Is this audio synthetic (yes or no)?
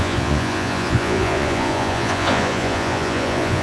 yes